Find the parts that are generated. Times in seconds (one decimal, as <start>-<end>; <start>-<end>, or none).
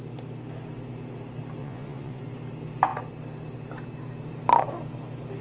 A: 1.6-2.2